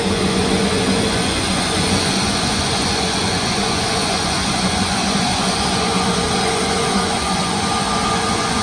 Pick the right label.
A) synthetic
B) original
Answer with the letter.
A